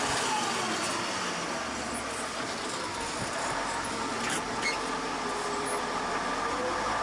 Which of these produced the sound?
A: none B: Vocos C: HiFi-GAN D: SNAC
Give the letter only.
A